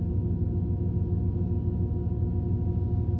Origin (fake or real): real